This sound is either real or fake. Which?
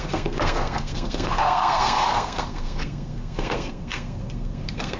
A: fake